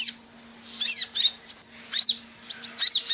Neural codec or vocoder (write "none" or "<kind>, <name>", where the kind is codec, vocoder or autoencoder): none